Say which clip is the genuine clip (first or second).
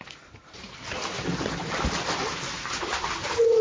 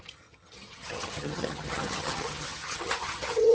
first